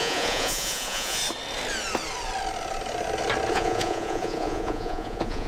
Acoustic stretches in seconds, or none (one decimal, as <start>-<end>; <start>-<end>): 1.2-3.5